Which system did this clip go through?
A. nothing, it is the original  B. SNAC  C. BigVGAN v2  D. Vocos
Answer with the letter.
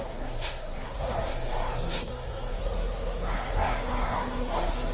B